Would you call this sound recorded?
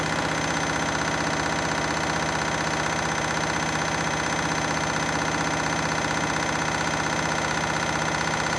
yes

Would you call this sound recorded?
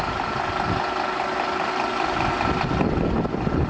yes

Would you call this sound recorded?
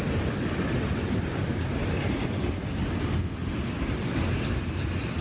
yes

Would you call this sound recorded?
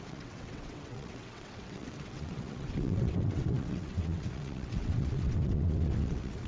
no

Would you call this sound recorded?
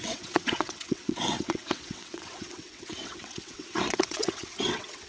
no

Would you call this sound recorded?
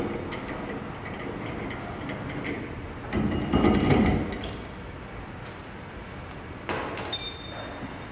yes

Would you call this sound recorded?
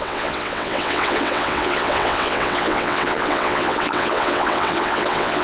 no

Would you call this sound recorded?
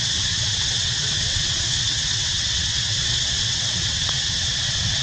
no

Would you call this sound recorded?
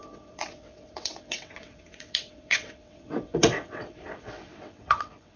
no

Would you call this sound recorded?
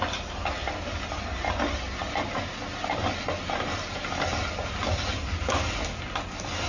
yes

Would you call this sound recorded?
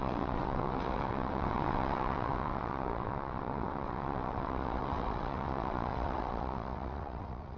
no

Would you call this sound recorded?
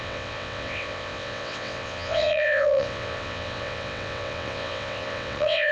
no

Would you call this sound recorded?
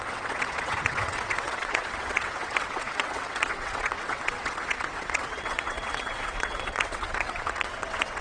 no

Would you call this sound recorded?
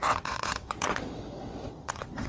no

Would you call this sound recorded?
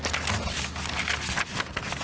yes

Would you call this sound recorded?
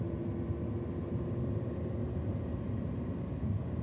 yes